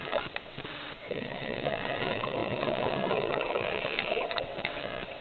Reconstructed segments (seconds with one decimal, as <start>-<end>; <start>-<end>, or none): 0.0-5.2